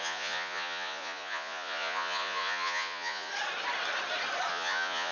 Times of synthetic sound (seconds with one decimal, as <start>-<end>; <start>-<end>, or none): 0.0-3.3; 4.5-5.1